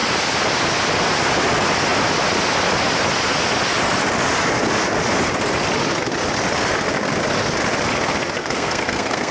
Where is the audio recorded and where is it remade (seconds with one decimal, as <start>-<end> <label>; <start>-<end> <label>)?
0.0-8.4 recorded; 8.4-9.3 remade